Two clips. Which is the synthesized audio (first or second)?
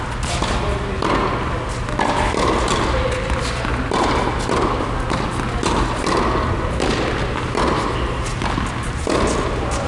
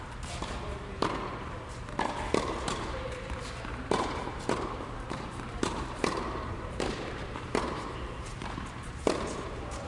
second